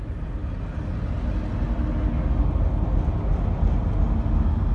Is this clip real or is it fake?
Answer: real